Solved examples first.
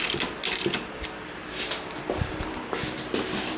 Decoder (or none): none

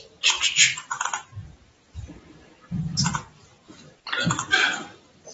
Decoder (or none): none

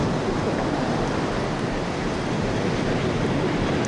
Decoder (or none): none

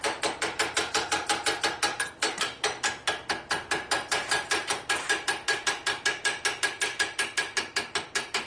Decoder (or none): none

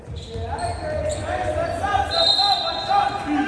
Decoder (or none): none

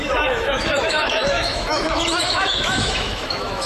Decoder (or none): autoencoder, DAC-VAE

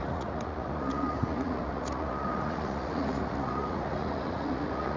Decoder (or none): vocoder, Vocos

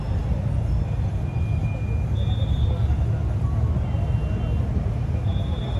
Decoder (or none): none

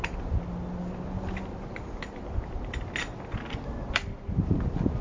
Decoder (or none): none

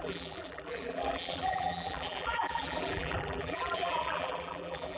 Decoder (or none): vocoder, BigVGAN v2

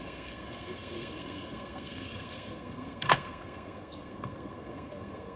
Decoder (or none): codec, SNAC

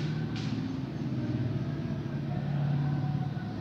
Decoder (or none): none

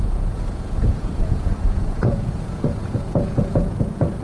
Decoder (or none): vocoder, Vocos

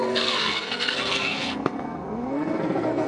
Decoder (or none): codec, SNAC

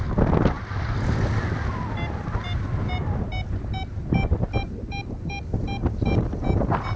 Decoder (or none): none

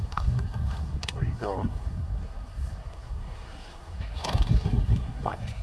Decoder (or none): codec, SNAC